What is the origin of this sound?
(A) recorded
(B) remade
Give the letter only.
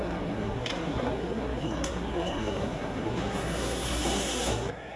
B